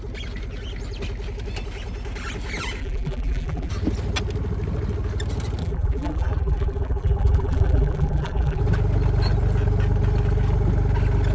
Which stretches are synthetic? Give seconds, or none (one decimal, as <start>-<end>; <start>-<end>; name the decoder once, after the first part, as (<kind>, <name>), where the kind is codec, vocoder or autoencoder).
2.8-3.7 (vocoder, BigVGAN v2); 5.6-8.6